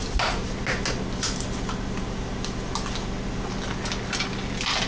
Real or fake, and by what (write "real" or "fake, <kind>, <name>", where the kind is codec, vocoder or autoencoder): real